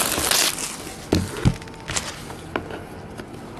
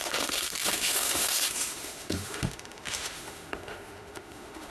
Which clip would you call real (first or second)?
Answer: first